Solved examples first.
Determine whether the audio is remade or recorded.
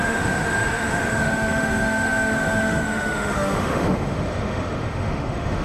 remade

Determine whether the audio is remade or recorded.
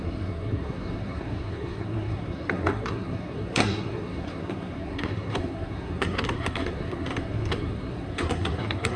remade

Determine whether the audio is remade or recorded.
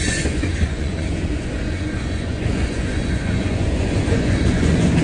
remade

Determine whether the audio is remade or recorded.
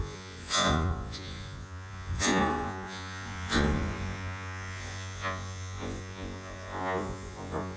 remade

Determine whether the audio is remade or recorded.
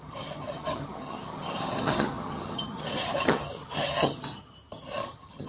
remade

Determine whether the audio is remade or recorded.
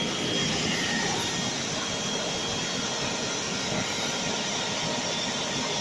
recorded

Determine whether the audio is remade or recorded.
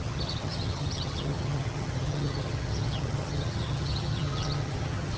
remade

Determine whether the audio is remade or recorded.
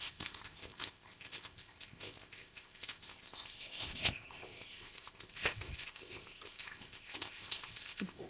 remade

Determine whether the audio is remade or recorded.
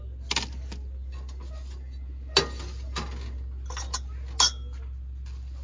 recorded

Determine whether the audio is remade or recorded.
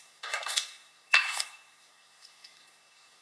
remade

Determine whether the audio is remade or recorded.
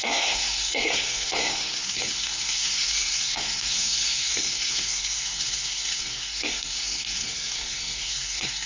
remade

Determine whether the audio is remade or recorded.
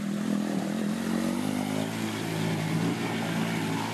recorded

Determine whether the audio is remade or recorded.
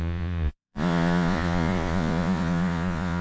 remade